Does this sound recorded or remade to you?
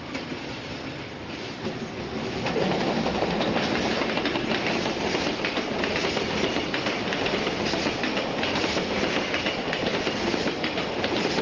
recorded